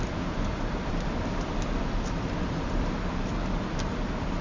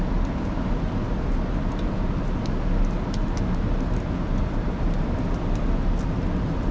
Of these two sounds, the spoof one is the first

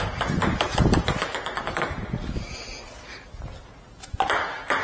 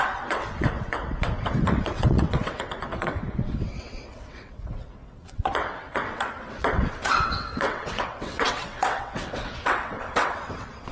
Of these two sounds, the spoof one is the second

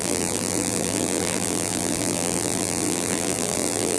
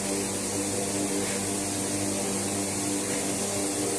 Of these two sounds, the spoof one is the first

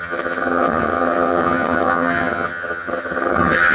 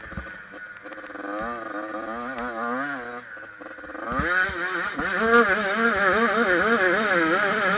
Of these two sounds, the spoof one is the first